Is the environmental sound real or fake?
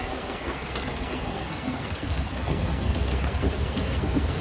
fake